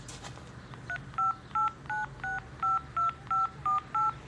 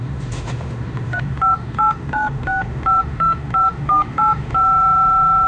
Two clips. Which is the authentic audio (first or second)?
first